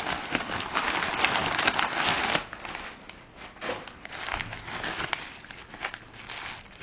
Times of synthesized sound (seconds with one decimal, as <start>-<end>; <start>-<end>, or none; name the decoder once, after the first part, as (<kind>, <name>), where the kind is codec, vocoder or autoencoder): none